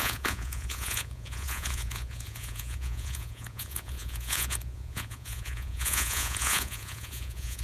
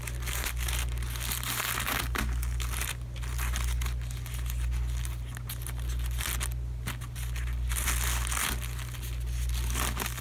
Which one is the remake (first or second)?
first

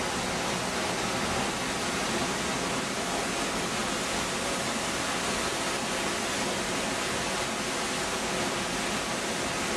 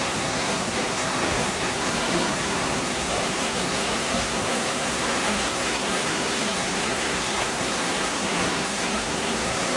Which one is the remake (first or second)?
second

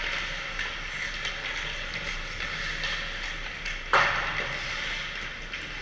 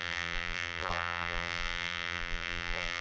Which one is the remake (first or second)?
second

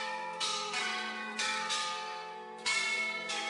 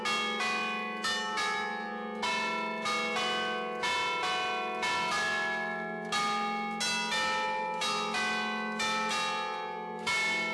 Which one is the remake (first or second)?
first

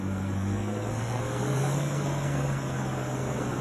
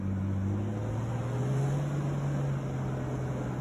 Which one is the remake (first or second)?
first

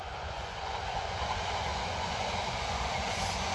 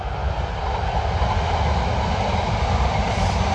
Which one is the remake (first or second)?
first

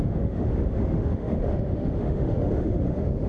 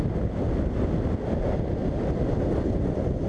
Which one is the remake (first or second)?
first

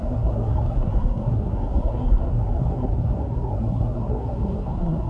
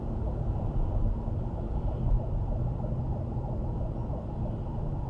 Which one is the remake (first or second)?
first